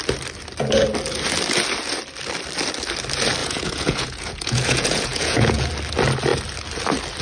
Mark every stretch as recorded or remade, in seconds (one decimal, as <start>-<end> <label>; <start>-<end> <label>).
0.0-3.4 recorded; 3.4-5.7 remade; 5.7-7.2 recorded